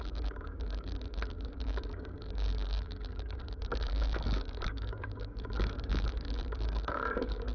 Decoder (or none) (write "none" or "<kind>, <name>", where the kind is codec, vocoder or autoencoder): codec, DAC